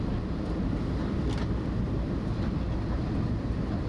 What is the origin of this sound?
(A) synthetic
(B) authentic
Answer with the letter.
B